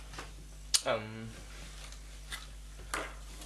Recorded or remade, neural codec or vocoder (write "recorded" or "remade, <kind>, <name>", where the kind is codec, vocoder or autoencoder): recorded